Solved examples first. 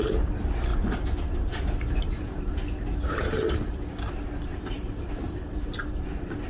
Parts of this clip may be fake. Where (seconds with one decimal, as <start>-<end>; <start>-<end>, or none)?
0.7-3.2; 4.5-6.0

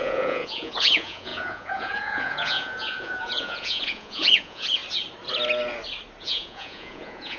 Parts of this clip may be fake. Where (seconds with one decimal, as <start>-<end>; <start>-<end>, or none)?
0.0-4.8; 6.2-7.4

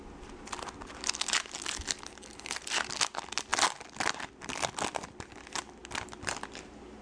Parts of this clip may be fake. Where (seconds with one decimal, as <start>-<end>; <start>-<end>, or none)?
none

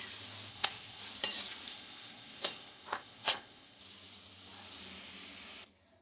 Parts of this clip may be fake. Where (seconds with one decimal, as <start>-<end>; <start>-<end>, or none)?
0.5-1.0; 1.7-3.8

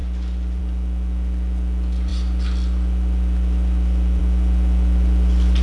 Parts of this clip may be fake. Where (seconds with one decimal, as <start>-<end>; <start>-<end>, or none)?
none

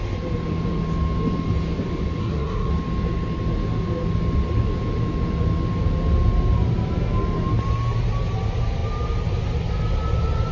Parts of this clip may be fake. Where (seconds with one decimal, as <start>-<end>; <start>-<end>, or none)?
2.2-2.7

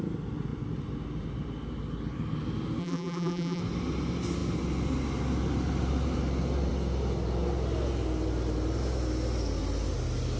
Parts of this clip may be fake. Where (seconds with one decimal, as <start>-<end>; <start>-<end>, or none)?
2.8-3.6

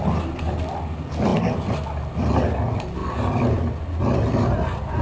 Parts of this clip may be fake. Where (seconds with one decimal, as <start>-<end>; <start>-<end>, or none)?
none